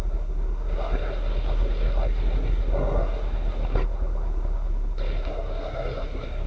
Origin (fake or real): fake